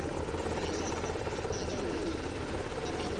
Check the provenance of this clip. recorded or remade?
recorded